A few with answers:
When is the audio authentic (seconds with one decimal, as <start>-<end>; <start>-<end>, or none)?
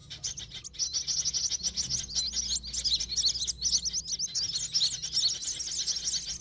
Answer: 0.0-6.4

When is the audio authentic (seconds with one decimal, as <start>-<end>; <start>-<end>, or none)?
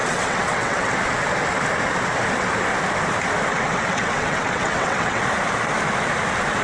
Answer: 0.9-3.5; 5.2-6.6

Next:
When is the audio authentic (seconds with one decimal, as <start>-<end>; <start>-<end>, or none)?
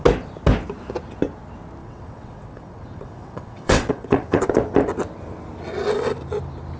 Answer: 0.0-1.8; 4.5-6.8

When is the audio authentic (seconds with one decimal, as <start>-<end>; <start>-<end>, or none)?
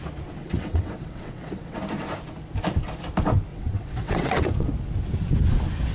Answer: 0.0-0.4; 1.8-3.5; 4.7-5.9